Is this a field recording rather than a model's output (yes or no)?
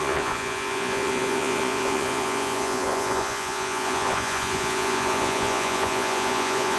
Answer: no